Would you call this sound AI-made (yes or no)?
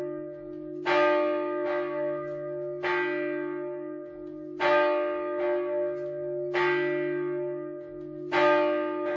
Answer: no